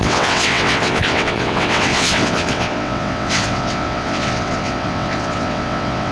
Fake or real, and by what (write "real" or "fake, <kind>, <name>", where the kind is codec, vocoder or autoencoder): fake, vocoder, WaveNeXt